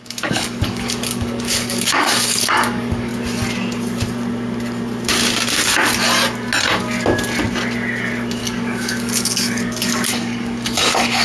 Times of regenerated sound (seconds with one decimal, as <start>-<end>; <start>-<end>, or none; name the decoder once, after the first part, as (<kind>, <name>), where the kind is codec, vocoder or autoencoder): 0.0-3.1 (codec, DAC); 8.4-11.2